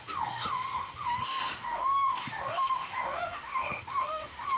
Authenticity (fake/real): fake